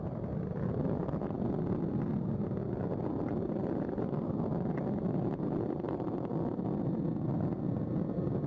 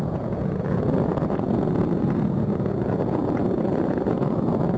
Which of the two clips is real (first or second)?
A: first